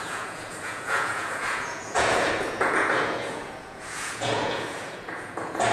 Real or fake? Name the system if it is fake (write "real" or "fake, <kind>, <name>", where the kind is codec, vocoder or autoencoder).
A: fake, vocoder, Vocos